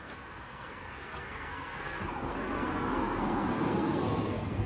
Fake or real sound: fake